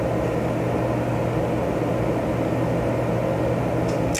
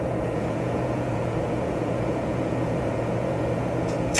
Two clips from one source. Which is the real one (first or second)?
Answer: first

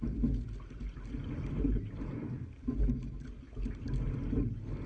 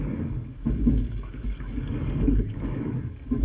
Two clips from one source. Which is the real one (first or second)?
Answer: first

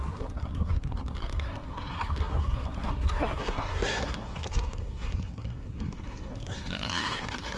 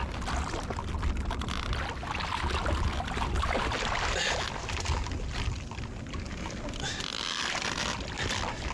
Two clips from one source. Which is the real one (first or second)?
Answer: second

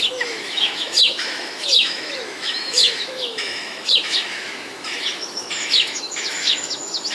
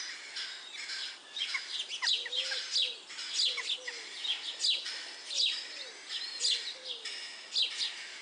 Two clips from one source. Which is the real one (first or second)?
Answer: second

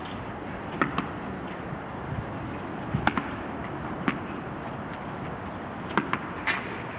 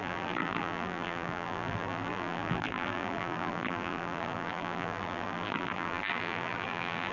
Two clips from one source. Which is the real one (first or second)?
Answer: first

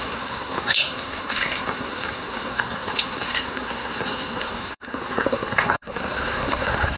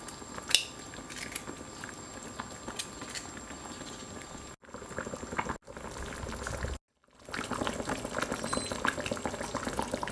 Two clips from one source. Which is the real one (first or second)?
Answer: second